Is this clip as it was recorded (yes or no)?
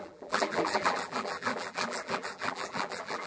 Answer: no